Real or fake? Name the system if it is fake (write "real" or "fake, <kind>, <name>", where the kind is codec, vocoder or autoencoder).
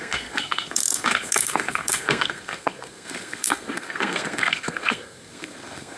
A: fake, codec, SNAC